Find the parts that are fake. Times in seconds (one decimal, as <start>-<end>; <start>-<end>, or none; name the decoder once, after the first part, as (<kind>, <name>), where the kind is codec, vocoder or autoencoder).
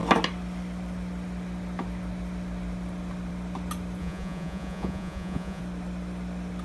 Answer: 4.0-5.6 (vocoder, Vocos)